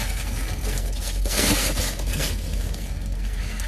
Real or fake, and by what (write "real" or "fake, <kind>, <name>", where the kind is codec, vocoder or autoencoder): fake, codec, SNAC